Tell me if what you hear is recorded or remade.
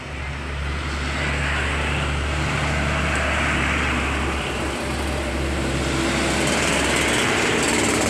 recorded